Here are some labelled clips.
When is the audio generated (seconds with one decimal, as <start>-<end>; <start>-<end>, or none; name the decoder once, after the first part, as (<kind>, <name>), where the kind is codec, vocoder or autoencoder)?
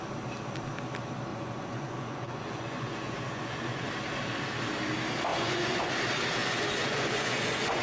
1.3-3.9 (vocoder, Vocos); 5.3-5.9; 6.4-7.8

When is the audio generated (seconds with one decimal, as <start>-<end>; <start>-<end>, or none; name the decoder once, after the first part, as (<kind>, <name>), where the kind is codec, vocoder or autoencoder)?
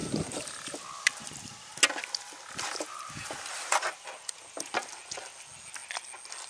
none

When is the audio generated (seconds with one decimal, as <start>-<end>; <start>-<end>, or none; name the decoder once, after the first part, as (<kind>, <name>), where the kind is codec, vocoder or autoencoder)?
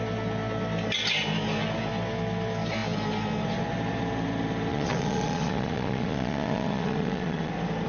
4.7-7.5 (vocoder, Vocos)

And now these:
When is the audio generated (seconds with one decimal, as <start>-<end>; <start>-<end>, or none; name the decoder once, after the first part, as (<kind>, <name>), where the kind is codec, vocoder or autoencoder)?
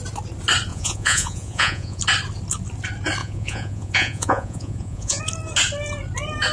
0.7-2.0 (vocoder, Vocos); 3.2-5.2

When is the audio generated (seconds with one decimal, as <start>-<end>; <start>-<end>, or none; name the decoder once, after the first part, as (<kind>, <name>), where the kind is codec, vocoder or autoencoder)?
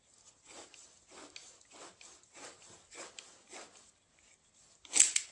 none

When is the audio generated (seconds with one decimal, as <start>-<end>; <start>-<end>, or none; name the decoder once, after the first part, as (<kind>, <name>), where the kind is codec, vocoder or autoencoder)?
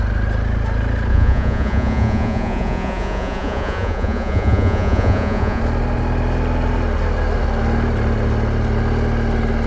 1.1-5.6 (vocoder, Vocos)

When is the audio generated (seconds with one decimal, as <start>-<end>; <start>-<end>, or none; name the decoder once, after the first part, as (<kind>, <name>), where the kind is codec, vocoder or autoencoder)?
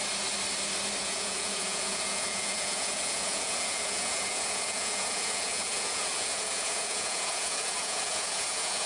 1.0-8.9 (vocoder, Vocos)